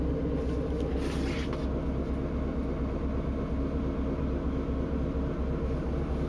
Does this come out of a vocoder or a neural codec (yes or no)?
no